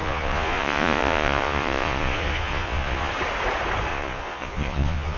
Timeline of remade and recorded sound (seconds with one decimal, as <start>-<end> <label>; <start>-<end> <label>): 0.0-3.1 remade; 3.1-3.9 recorded; 3.9-5.2 remade